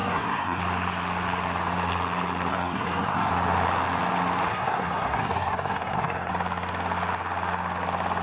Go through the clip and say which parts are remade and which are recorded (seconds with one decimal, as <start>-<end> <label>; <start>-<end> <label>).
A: 0.0-0.6 remade; 0.6-2.5 recorded; 2.5-3.3 remade; 3.3-4.5 recorded; 4.5-6.3 remade; 6.3-8.2 recorded